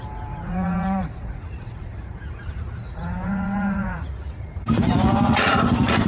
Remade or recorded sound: remade